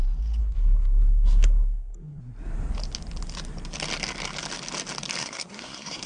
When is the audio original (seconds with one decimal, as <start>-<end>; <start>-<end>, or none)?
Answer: 0.0-0.4; 2.2-5.2